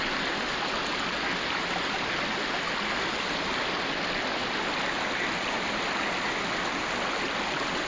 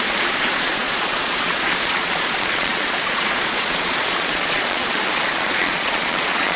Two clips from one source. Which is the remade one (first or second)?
second